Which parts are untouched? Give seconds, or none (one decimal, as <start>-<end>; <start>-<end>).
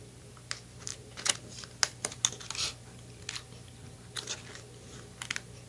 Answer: 0.0-5.7